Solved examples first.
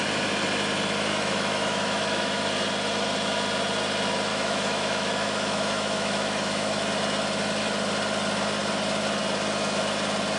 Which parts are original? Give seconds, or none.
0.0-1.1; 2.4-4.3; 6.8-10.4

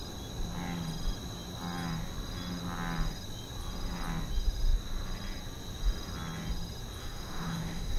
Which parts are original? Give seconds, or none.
0.0-7.0

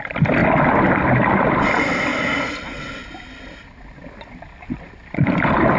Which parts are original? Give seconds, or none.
0.0-5.8

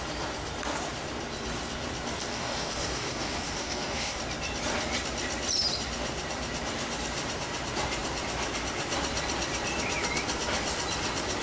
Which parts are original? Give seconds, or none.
0.0-2.3; 4.2-11.4

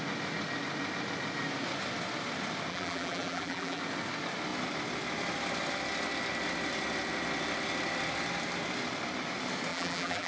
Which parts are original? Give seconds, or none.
0.0-2.7; 3.8-9.7

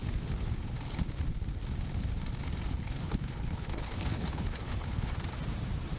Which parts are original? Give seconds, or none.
0.0-2.8; 5.1-6.0

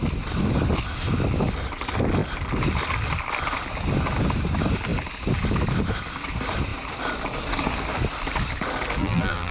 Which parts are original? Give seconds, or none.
0.0-9.0

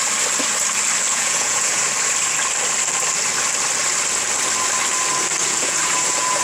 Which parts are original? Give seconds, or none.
0.0-1.1; 1.8-5.4